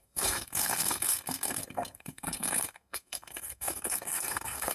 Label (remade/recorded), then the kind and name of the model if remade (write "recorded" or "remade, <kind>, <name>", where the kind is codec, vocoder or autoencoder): remade, codec, SNAC